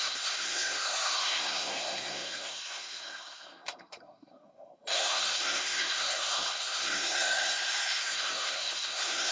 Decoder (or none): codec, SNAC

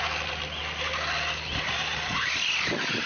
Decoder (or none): none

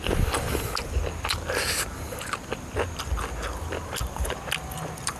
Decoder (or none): none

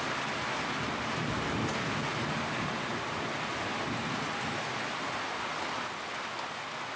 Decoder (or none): none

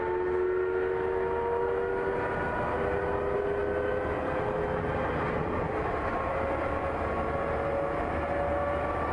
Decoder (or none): none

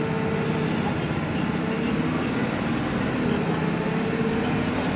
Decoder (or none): none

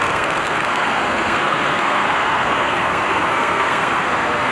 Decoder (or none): codec, SNAC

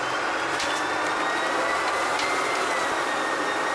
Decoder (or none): none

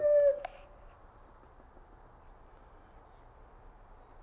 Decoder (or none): none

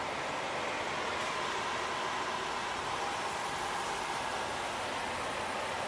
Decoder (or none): none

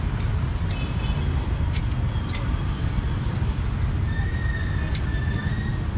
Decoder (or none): none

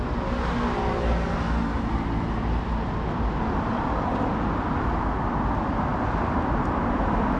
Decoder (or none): none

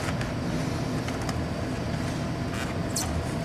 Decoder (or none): none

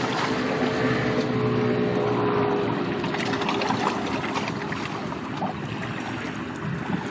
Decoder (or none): none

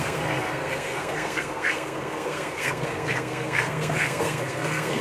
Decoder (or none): codec, SNAC